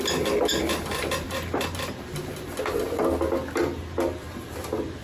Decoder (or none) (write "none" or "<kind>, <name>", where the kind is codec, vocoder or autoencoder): none